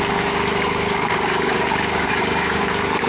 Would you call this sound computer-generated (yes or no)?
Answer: yes